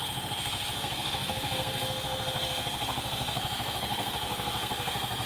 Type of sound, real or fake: fake